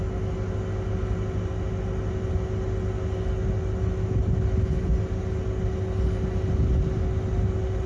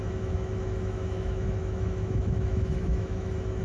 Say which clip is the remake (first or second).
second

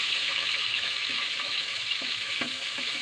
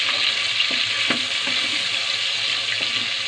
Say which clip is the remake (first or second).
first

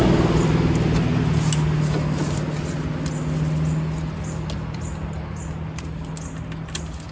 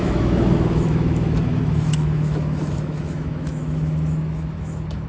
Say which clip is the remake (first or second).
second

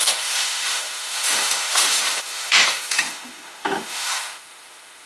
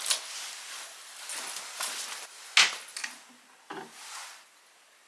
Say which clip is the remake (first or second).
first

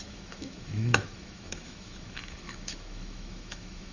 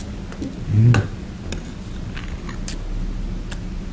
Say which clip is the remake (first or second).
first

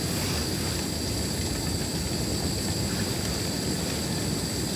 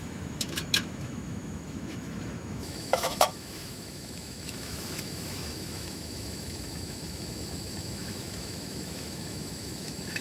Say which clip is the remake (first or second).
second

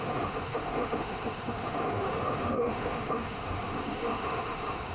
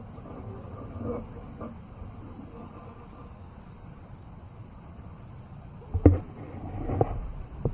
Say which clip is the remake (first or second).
first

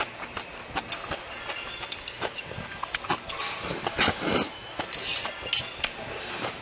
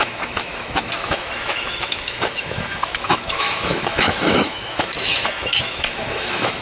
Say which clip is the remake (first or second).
second